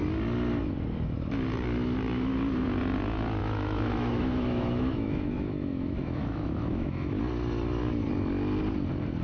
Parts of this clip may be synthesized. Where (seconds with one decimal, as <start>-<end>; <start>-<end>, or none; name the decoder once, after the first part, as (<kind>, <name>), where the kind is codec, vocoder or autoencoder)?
3.4-7.2 (autoencoder, DAC-VAE)